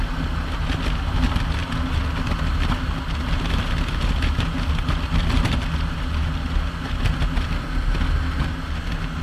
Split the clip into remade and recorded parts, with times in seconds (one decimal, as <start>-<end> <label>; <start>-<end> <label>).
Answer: 0.0-9.2 recorded